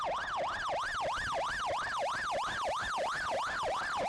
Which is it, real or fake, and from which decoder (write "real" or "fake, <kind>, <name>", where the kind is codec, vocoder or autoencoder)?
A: fake, vocoder, BigVGAN v2